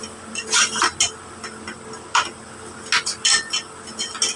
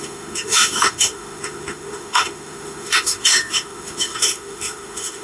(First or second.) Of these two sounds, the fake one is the second